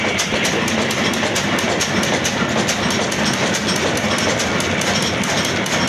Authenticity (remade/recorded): recorded